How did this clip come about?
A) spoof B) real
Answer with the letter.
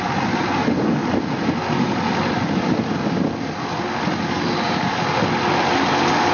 B